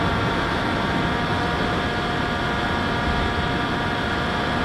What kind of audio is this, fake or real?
real